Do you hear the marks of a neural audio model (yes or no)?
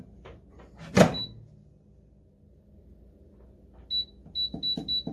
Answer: no